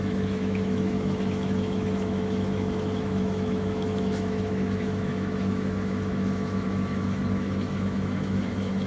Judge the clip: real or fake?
fake